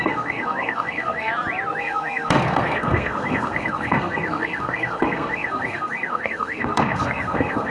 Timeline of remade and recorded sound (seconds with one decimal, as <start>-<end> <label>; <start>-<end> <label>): 0.0-1.3 remade; 1.3-1.8 recorded; 1.8-7.7 remade